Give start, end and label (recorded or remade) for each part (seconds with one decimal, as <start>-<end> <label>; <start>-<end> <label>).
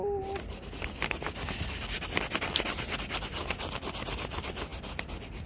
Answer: 0.0-5.5 recorded